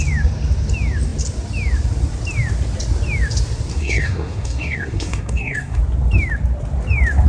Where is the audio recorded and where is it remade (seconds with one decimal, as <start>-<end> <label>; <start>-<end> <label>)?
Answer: 0.0-3.7 recorded; 3.7-5.8 remade; 5.8-7.3 recorded